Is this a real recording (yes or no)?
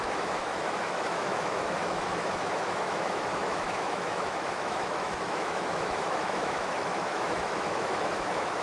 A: no